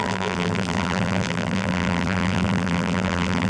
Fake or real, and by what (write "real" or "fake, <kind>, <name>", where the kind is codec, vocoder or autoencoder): fake, vocoder, BigVGAN v2